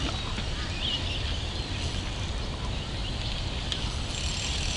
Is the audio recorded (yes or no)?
yes